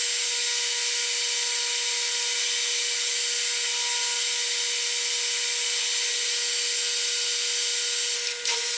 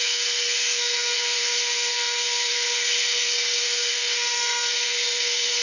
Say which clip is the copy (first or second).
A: second